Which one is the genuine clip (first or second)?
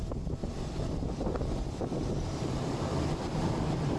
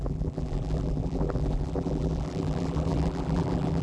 first